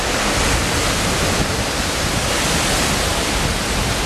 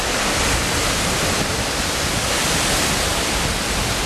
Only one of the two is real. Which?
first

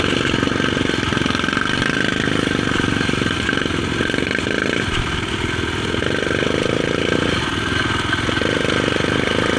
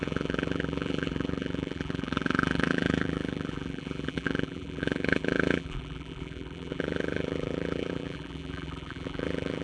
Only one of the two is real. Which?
first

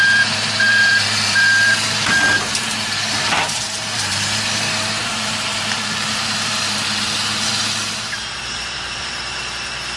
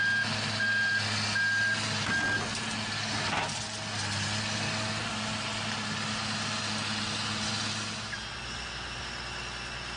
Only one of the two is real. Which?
second